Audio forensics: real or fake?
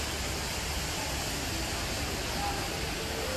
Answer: real